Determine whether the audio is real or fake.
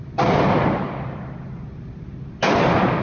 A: real